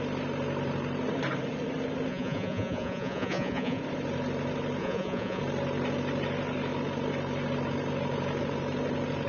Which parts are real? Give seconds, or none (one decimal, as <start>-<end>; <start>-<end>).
0.0-2.1; 3.8-4.8; 5.4-9.3